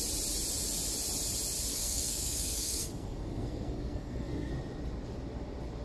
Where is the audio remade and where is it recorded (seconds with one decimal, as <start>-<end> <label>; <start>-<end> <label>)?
0.0-1.7 recorded; 1.7-4.5 remade; 4.5-5.8 recorded

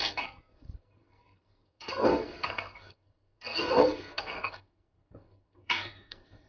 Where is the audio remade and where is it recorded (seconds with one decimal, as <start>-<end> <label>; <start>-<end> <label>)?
0.0-6.5 remade

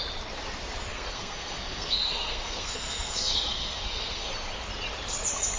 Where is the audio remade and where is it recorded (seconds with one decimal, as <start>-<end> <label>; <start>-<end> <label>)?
0.0-0.9 recorded; 0.9-4.3 remade; 4.3-5.6 recorded